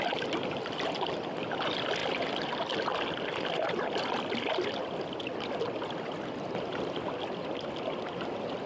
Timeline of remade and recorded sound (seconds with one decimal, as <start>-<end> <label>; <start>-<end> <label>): 0.0-8.7 recorded